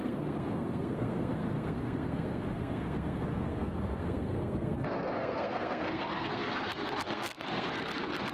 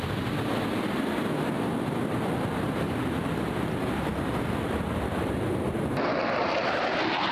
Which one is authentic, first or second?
second